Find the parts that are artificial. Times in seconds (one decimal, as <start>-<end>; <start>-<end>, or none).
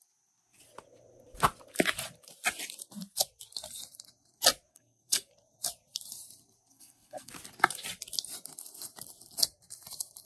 4.7-5.3; 6.7-7.3